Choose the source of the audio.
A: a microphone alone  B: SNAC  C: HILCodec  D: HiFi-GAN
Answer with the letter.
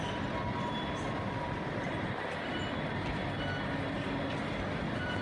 A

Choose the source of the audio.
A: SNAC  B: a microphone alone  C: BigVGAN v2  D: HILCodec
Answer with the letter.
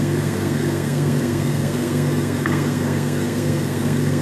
A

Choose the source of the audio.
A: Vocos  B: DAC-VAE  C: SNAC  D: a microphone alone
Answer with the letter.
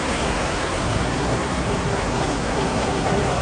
C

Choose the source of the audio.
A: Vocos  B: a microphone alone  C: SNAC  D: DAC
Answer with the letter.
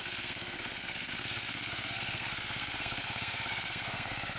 C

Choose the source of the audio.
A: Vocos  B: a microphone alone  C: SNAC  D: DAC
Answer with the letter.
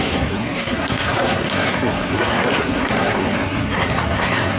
C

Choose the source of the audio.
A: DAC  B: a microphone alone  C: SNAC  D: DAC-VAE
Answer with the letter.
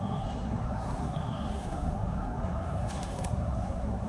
C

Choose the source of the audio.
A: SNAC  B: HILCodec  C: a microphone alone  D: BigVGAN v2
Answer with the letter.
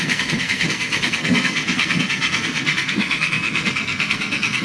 A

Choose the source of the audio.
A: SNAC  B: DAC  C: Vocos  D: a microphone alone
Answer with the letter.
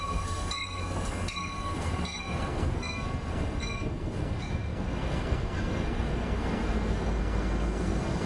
A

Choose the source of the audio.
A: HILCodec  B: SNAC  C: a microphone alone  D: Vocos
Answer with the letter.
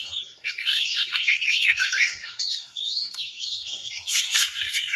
B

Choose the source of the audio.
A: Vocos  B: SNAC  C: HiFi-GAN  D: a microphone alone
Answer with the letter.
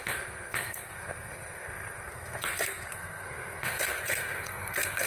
B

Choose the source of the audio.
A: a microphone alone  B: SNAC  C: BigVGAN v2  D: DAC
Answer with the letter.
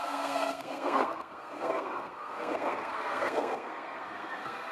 B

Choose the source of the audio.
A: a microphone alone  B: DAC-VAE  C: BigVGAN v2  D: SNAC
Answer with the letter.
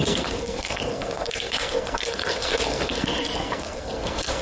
D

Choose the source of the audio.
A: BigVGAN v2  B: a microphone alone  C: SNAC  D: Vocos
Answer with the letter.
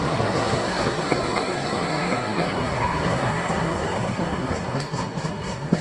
C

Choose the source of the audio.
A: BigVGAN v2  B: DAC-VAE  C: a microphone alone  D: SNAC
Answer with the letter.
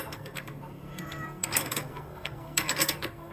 D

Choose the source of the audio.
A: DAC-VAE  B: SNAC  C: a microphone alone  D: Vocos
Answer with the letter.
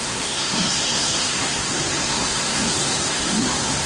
B